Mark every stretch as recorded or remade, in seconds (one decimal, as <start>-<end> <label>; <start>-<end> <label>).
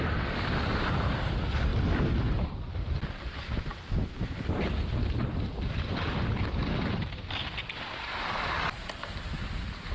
0.0-1.7 remade; 1.7-2.9 recorded; 2.9-3.7 remade; 3.7-5.2 recorded; 5.2-9.9 remade